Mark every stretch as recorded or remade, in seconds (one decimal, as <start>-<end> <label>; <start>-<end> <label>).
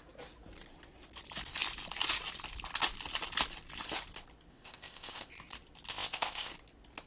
0.0-4.5 recorded; 4.5-5.3 remade; 5.3-5.9 recorded; 5.9-6.5 remade; 6.5-7.1 recorded